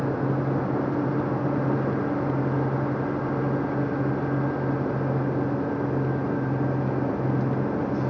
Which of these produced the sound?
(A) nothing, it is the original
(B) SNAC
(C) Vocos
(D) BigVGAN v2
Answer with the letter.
A